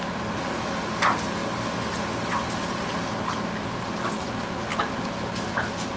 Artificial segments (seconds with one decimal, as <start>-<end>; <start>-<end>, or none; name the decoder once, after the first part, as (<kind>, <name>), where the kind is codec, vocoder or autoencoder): none